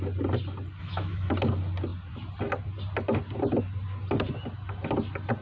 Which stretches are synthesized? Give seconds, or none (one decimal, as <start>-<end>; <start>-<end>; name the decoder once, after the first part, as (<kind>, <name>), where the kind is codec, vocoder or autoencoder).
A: 0.8-1.3 (autoencoder, DAC-VAE)